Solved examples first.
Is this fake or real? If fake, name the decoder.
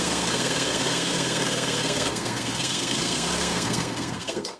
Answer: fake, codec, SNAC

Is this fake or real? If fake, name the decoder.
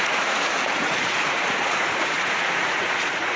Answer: fake, vocoder, Vocos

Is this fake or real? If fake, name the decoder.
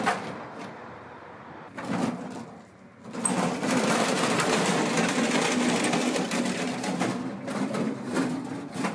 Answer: real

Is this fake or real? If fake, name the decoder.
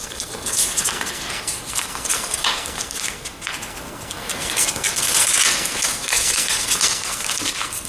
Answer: fake, codec, SNAC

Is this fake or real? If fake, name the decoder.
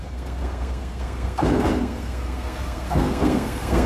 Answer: fake, codec, SNAC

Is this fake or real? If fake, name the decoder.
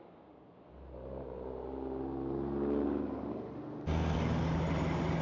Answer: real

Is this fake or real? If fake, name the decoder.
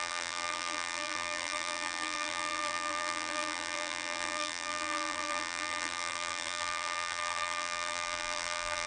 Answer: fake, vocoder, BigVGAN v2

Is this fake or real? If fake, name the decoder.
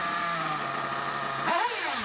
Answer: real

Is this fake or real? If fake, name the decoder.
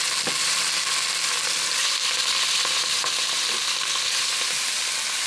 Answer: real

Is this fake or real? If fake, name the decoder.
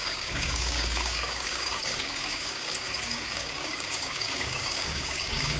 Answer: fake, codec, DAC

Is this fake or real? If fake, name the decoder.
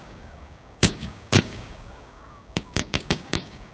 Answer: fake, codec, DAC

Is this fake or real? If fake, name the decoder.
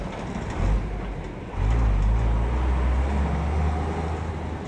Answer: real